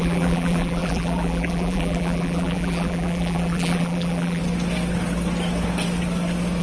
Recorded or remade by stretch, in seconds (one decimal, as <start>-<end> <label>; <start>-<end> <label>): 0.0-4.4 remade; 4.4-6.6 recorded